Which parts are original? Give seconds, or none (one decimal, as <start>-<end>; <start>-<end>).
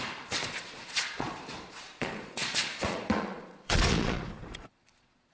none